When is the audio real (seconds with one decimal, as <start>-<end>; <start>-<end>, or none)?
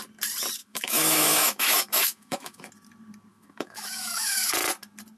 0.0-0.6; 2.7-3.3; 4.5-5.2